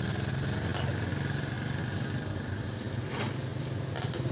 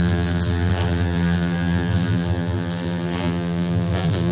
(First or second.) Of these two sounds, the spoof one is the second